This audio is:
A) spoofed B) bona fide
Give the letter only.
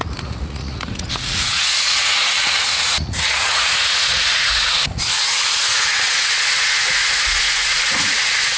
A